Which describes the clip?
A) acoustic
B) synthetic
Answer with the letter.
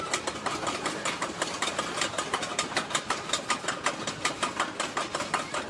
A